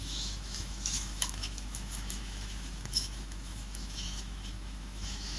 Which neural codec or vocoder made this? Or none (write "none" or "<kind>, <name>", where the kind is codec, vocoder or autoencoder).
autoencoder, DAC-VAE